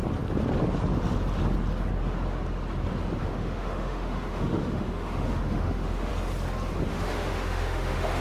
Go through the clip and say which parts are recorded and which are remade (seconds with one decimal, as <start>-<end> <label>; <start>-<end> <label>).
0.0-3.2 recorded; 3.2-6.1 remade; 6.1-6.9 recorded; 6.9-8.2 remade